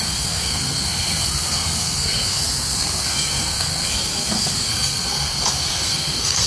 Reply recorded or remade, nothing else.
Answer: remade